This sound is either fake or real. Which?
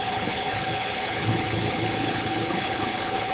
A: fake